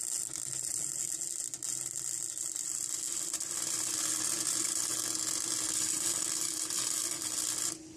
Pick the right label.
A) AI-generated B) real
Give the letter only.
B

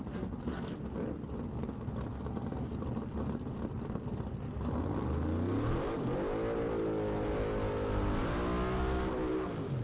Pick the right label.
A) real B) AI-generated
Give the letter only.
A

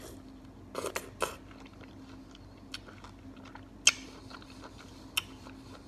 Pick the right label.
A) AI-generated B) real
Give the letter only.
B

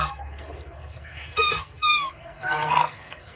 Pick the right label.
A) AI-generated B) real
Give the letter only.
A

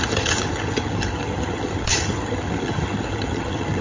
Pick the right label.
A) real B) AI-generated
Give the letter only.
B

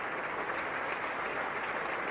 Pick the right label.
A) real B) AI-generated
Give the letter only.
A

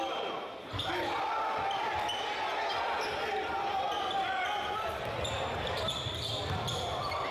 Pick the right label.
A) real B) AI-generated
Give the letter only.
B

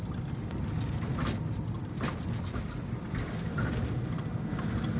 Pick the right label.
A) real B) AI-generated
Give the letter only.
A